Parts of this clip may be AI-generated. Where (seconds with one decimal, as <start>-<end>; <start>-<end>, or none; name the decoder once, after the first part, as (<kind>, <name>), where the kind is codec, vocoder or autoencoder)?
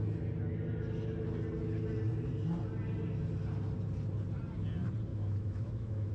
5.1-6.1 (autoencoder, DAC-VAE)